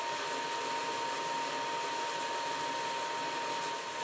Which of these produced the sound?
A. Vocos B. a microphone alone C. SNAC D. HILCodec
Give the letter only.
B